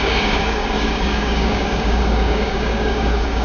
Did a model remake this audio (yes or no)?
yes